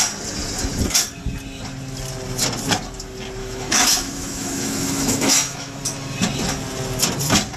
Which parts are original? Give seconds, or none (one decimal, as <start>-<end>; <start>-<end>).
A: 0.0-3.4; 5.8-7.6